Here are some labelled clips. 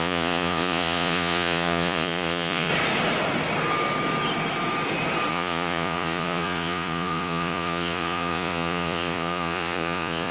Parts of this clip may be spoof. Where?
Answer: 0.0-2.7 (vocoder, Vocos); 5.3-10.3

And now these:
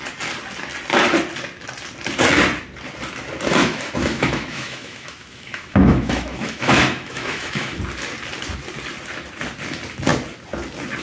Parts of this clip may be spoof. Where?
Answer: 3.6-7.8 (autoencoder, DAC-VAE)

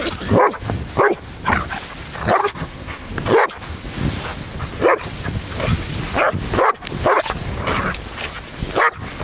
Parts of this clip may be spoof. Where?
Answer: 2.4-3.1 (codec, SNAC)

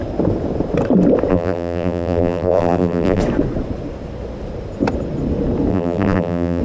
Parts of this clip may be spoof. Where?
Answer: 1.3-3.2 (vocoder, BigVGAN v2); 5.7-6.6

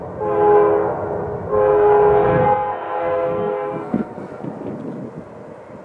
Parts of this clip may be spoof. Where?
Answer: 1.5-4.3 (codec, SNAC)

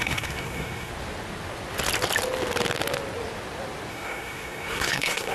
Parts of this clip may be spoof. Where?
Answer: 0.0-0.9 (codec, SNAC); 3.9-5.3

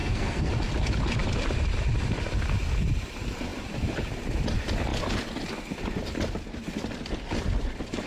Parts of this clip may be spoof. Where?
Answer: 0.0-0.5 (codec, SNAC)